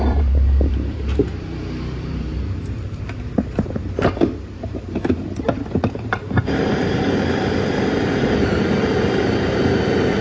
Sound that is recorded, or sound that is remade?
remade